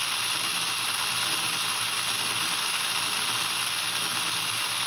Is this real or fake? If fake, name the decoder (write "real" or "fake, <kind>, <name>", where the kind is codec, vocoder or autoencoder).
real